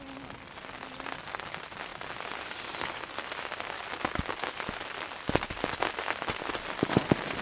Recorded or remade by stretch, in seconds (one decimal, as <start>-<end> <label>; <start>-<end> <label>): 0.0-7.4 recorded